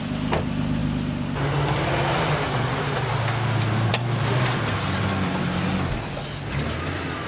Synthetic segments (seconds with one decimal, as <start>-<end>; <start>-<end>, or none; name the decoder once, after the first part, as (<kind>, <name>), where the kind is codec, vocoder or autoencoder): 3.9-5.7 (vocoder, BigVGAN v2)